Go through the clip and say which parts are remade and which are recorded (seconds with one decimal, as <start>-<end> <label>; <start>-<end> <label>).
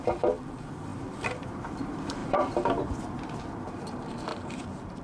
0.0-5.0 remade